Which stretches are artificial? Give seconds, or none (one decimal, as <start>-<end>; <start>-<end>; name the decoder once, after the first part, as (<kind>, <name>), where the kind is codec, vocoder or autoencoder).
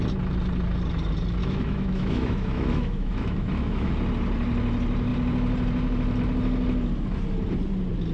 1.4-3.9 (autoencoder, DAC-VAE)